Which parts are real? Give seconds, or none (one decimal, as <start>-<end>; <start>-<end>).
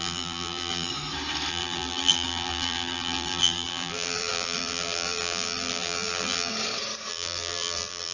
0.9-1.5; 6.5-7.1